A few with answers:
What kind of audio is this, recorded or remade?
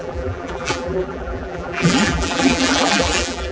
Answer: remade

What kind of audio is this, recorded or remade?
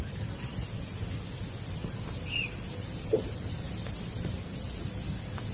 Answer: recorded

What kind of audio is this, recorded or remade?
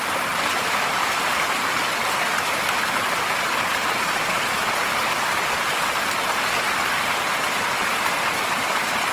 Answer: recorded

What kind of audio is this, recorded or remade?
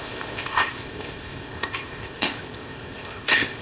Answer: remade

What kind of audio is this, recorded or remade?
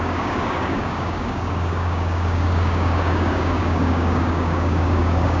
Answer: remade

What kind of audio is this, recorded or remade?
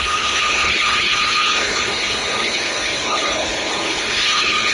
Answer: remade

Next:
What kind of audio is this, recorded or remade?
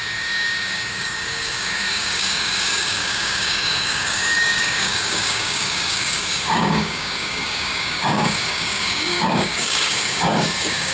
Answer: remade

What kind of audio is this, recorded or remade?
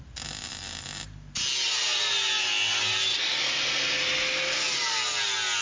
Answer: recorded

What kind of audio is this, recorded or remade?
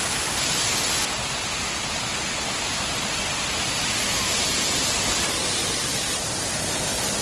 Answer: recorded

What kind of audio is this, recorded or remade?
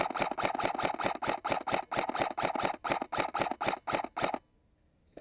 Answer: recorded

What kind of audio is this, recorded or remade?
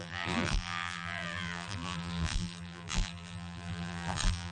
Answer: remade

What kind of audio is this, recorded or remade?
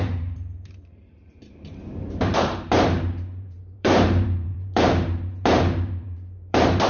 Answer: remade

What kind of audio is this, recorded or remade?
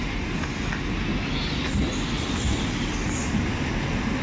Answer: recorded